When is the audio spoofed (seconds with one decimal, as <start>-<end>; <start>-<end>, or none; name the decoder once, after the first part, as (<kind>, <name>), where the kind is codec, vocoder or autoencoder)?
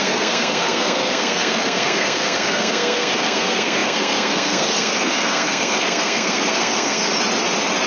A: 0.0-7.1 (codec, SNAC)